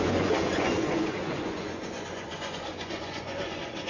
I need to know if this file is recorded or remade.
remade